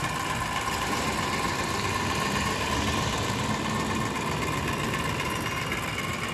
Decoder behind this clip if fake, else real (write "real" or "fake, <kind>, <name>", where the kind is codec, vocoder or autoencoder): real